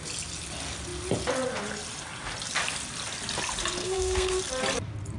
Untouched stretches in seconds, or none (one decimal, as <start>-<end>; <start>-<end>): 0.0-3.8; 4.4-5.2